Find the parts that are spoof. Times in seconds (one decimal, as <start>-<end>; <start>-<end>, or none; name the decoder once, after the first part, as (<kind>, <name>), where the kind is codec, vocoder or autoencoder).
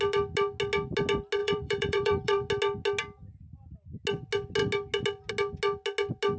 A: 1.4-2.5 (vocoder, BigVGAN v2)